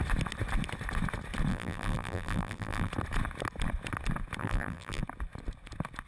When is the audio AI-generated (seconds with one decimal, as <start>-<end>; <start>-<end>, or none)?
1.5-2.9; 4.4-5.0